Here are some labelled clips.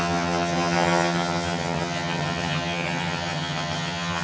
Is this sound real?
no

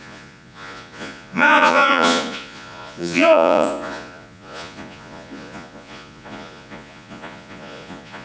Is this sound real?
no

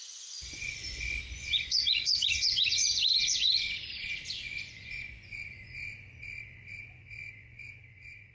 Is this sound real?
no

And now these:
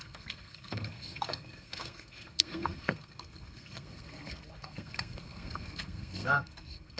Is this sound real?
no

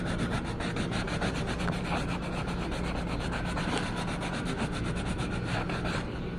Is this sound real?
yes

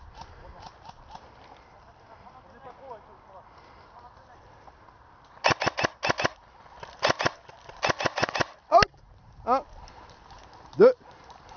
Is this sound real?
yes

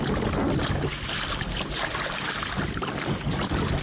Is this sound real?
yes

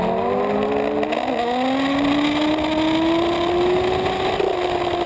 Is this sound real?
yes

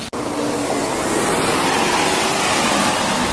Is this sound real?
yes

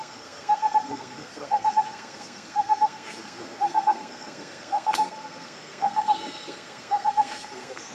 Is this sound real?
no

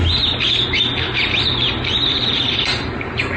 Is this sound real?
yes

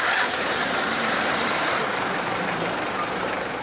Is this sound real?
no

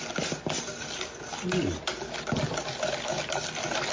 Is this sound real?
yes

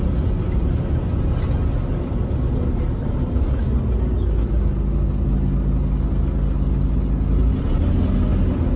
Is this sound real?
yes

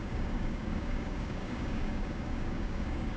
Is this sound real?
no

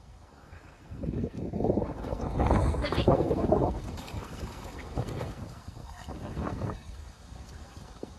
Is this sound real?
no